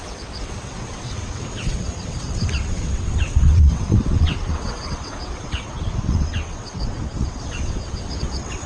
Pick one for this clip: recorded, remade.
remade